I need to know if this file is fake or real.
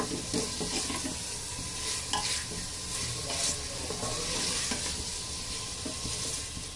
real